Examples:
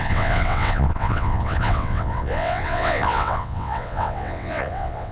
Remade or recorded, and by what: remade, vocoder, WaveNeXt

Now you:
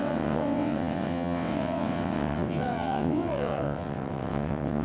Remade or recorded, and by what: remade, vocoder, WaveNeXt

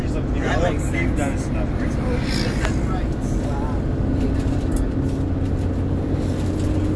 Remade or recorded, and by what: recorded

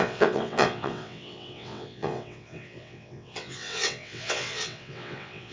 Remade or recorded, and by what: remade, vocoder, WaveNeXt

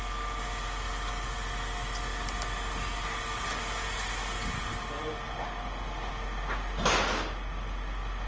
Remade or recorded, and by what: recorded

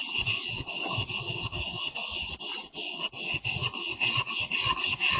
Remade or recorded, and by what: remade, vocoder, WaveNeXt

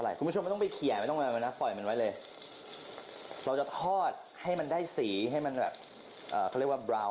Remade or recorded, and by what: recorded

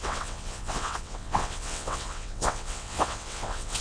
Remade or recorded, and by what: remade, vocoder, WaveNeXt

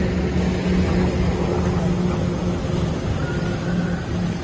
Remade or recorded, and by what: recorded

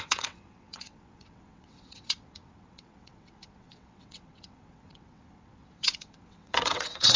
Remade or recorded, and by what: remade, vocoder, WaveNeXt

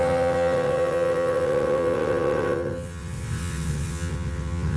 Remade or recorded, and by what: remade, vocoder, WaveNeXt